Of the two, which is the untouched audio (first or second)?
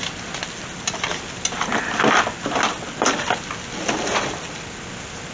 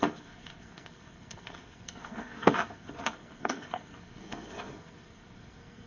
first